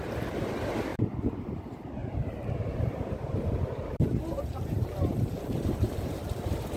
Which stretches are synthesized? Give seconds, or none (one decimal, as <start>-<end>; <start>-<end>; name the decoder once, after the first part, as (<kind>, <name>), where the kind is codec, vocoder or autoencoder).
0.9-1.6 (vocoder, BigVGAN v2); 2.0-6.1